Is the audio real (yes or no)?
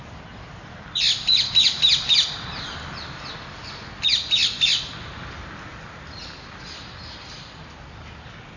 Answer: yes